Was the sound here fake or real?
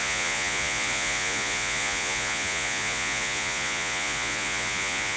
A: fake